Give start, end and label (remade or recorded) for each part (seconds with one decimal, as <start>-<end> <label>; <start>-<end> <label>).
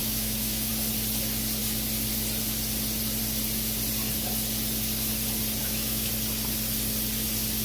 0.0-0.7 remade; 0.7-5.6 recorded; 5.6-6.1 remade; 6.1-7.6 recorded